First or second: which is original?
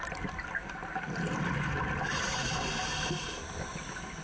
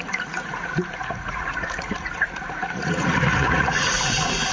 first